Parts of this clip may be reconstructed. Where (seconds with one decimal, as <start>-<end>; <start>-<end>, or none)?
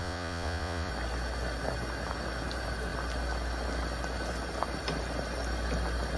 0.0-0.9